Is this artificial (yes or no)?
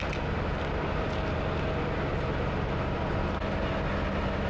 no